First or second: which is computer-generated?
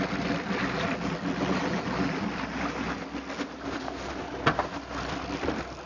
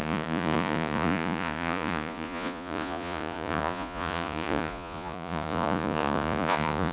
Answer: second